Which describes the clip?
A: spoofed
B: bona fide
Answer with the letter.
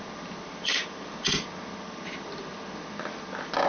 B